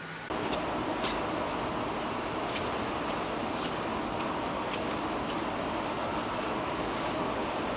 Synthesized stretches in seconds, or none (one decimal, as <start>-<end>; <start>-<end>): 3.4-4.3; 6.1-7.1